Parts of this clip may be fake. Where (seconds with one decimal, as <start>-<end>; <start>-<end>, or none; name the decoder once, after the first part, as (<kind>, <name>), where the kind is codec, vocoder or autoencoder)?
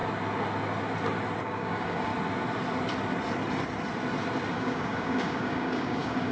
1.4-2.1 (codec, DAC); 4.5-6.3